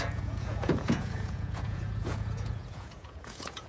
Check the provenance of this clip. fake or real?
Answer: fake